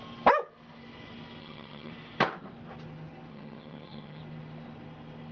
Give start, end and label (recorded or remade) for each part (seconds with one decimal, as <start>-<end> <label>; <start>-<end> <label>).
0.0-1.4 recorded; 1.4-1.9 remade; 1.9-3.3 recorded; 3.3-4.2 remade; 4.2-5.3 recorded